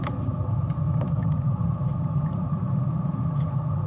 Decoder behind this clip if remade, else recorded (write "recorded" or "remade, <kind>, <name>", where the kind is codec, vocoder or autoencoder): recorded